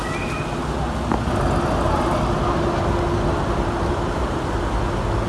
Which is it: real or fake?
real